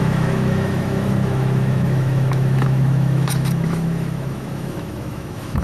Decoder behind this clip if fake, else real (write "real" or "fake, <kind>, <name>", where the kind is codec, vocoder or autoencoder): fake, autoencoder, DAC-VAE